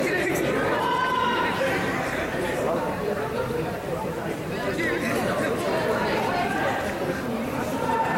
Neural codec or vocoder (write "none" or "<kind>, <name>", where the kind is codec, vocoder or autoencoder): vocoder, BigVGAN v2